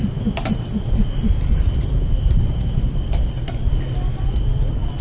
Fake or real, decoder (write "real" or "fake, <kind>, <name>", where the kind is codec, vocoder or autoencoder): real